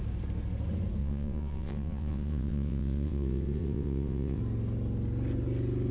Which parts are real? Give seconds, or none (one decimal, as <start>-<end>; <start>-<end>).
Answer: 0.0-1.0; 4.4-5.9